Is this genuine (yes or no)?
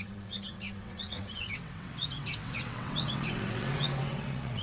no